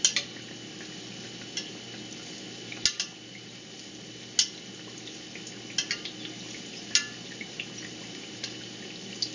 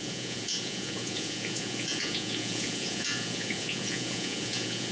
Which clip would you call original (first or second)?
first